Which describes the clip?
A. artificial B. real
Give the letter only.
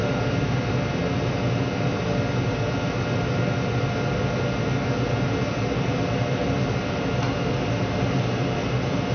B